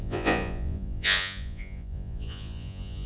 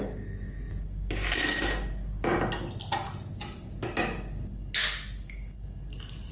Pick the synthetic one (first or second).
first